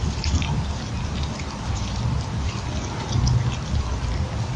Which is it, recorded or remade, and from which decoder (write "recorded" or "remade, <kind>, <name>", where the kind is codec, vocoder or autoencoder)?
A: recorded